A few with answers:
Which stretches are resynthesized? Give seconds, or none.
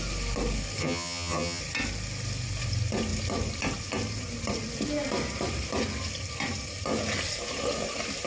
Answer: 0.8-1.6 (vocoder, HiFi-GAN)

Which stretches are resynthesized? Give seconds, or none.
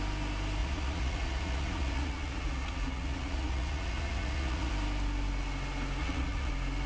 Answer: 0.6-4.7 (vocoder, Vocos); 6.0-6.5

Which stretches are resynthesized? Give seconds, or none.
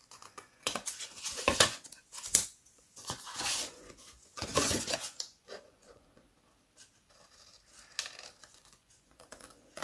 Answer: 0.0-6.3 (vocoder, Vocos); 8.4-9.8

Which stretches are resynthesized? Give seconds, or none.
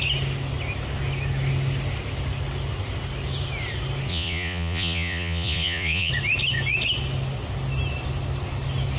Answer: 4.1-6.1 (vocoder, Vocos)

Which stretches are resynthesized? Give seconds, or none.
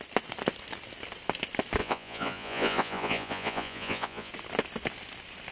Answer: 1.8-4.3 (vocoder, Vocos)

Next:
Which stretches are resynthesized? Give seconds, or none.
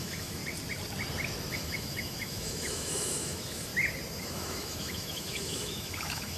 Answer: 0.0-0.4 (autoencoder, DAC-VAE); 1.5-3.7; 4.2-6.4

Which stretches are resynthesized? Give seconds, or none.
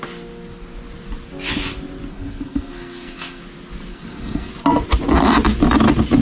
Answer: 2.1-3.4 (codec, SNAC); 3.9-4.5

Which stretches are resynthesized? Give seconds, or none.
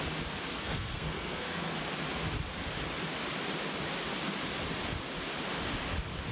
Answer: 0.5-1.8 (codec, SNAC)